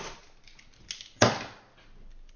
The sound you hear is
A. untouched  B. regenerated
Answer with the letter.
A